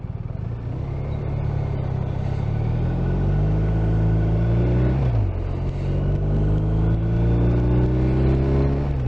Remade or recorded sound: recorded